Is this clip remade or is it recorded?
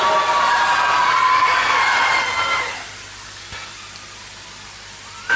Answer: recorded